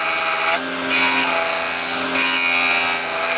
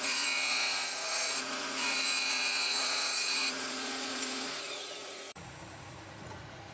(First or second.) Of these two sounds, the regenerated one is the second